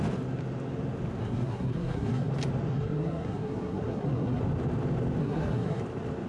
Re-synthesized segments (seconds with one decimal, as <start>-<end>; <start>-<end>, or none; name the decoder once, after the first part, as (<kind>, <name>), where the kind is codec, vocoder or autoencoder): 1.2-2.3 (codec, SNAC); 2.7-4.4; 5.2-5.8